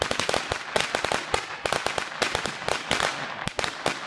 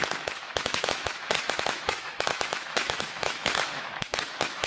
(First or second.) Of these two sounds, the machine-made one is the second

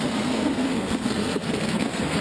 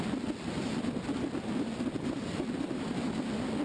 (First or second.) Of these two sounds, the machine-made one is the first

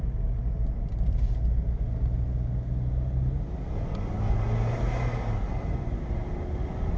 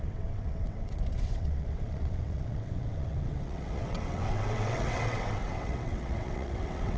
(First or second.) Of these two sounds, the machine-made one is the second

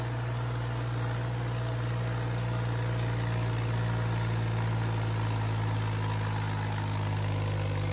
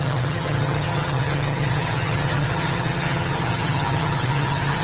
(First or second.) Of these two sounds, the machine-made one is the second